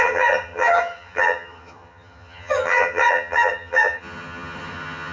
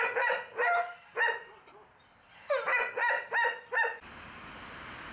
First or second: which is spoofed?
first